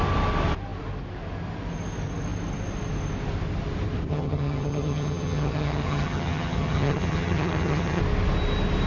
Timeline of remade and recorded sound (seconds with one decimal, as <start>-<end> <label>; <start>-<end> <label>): 0.0-4.1 recorded; 4.1-8.0 remade; 8.0-8.9 recorded